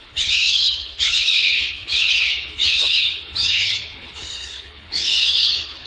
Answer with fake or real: fake